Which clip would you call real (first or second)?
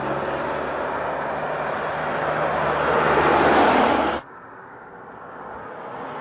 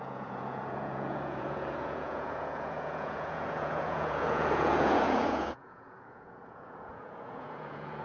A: first